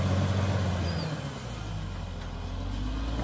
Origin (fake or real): real